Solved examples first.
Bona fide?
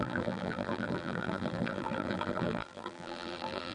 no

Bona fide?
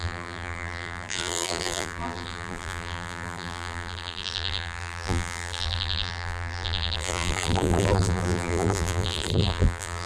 no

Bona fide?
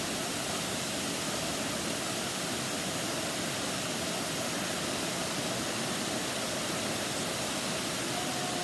yes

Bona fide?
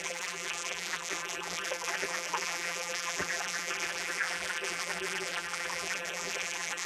no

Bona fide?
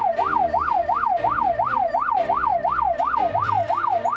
no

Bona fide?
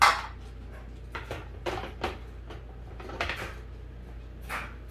yes